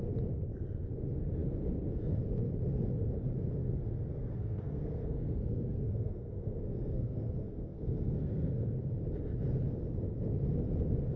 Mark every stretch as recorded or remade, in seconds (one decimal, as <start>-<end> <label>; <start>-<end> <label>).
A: 0.0-4.1 recorded; 4.1-8.6 remade; 8.6-11.2 recorded